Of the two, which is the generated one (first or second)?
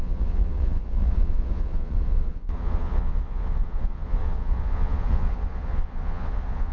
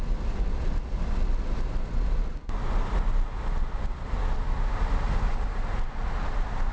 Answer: first